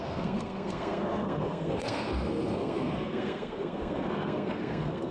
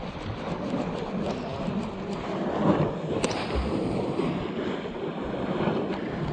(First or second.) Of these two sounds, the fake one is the first